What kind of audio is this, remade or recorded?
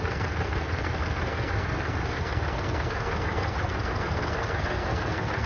remade